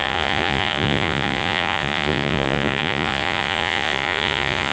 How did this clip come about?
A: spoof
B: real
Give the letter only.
A